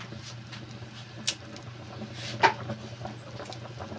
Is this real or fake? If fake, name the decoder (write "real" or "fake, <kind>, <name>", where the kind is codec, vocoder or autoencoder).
real